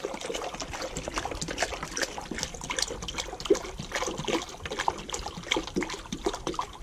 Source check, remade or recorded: recorded